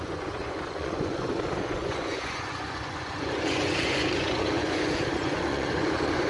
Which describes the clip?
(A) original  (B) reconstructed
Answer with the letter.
B